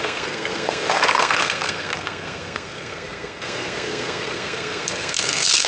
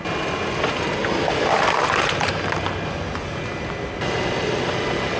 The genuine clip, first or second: second